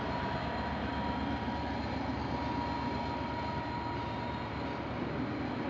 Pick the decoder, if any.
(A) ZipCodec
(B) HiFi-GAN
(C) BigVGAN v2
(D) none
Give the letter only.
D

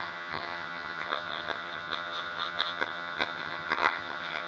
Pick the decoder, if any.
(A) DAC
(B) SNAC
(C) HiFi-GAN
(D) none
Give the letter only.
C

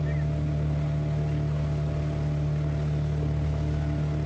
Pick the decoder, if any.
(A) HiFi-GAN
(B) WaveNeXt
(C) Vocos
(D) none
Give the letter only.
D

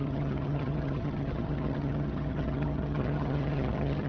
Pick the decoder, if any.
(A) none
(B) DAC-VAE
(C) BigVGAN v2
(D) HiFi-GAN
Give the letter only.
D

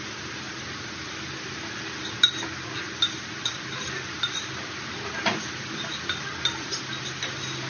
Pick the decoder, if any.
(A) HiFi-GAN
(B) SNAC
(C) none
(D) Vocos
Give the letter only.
C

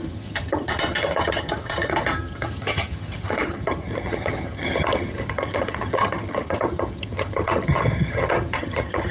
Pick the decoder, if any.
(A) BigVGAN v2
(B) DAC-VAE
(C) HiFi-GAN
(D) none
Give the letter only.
C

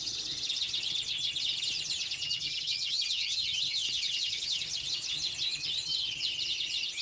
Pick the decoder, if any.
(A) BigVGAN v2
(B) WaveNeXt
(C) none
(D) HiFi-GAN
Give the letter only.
D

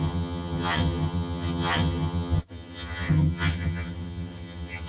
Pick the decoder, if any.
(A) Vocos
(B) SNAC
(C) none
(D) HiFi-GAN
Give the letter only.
D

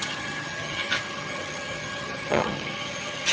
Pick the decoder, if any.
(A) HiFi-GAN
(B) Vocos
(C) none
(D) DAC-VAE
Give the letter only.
A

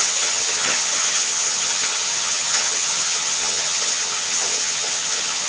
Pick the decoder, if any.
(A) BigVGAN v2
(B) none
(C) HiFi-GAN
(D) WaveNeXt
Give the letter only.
C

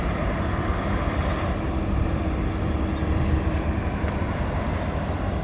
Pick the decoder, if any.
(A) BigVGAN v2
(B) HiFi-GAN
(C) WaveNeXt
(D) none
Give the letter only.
D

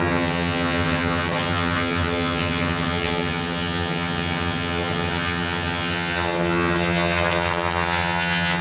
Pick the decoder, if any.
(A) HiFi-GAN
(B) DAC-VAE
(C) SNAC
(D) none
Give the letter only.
A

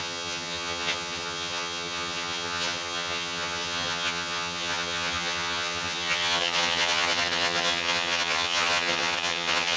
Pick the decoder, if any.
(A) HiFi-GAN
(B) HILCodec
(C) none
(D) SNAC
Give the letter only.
A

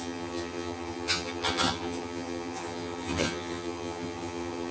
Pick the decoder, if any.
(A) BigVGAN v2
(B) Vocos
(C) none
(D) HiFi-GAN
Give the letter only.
D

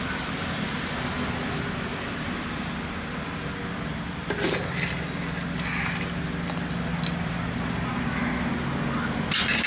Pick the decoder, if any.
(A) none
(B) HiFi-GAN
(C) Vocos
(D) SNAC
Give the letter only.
A